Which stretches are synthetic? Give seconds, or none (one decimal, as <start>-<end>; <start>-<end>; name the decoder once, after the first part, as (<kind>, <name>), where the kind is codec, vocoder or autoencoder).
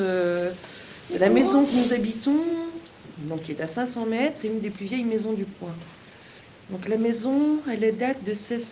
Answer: none